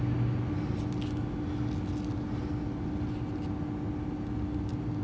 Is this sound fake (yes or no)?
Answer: no